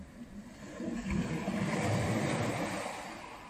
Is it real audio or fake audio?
real